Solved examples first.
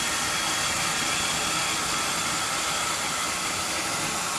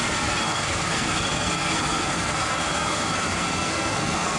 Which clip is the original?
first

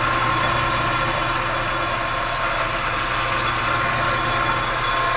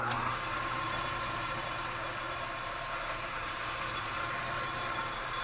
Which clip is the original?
first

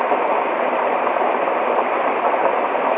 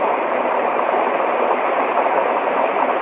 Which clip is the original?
first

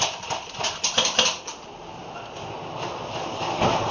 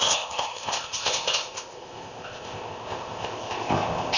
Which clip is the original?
first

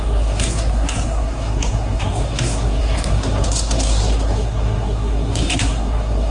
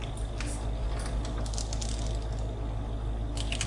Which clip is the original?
second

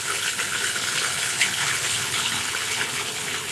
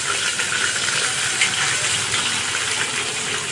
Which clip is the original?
second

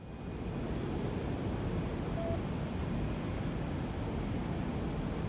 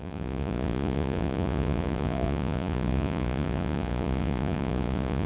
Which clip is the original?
first